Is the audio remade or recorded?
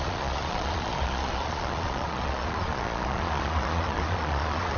remade